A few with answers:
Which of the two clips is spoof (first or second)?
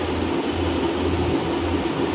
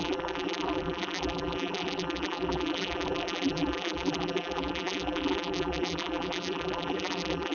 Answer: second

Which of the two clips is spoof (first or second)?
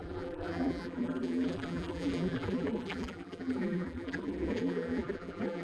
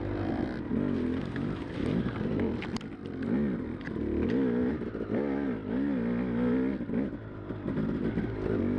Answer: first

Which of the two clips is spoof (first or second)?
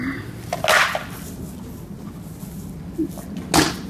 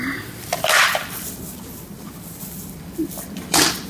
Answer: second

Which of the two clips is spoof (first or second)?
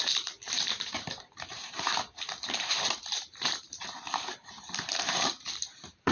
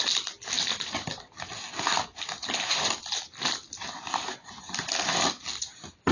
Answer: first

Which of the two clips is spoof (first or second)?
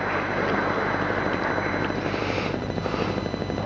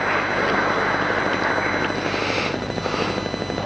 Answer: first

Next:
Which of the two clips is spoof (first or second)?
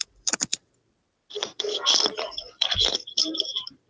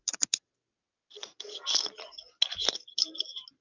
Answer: first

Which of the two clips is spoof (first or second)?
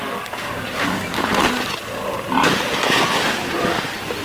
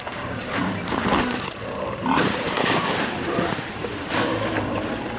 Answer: second